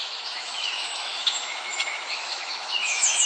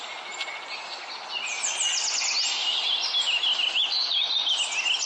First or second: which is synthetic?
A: first